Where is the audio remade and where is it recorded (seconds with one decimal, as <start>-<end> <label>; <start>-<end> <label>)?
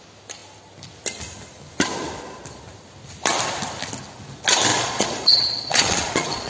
0.0-4.7 recorded; 4.7-6.5 remade